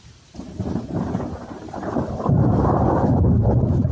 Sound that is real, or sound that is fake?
fake